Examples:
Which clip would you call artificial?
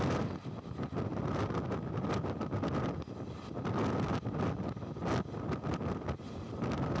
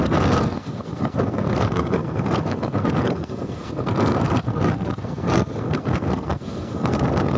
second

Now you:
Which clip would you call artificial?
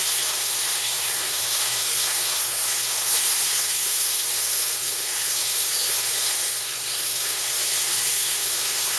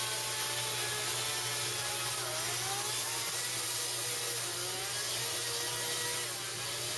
first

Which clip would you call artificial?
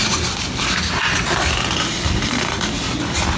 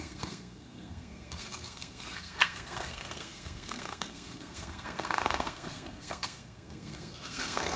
second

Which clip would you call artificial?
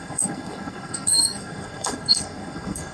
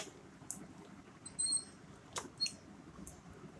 first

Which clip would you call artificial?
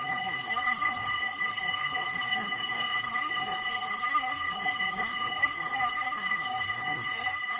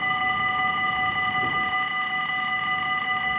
first